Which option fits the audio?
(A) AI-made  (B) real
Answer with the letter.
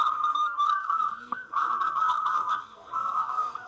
A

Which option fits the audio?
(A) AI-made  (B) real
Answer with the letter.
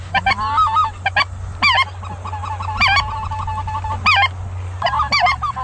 B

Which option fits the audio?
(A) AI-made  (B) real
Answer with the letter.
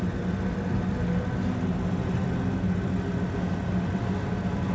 B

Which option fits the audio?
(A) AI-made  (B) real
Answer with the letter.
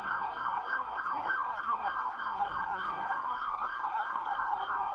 A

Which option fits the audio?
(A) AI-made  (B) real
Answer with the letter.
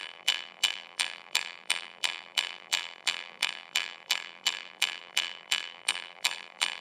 A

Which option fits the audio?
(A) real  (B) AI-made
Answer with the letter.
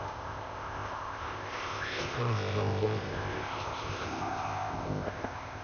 B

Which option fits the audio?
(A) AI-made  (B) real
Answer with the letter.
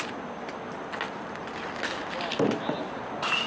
B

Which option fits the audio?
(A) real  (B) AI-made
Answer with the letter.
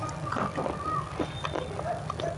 A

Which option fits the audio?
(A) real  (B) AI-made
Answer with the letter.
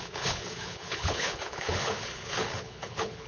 B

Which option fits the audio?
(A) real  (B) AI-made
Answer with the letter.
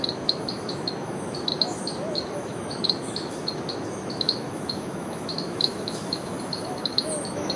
B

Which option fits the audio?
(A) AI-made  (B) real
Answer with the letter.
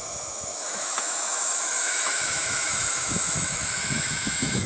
A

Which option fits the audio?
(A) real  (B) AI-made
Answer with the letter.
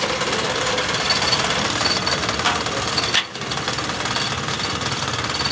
A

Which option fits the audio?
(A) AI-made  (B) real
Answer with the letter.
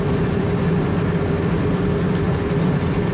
B